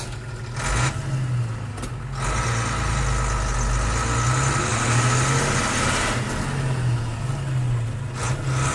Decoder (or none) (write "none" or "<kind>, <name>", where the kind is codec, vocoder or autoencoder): none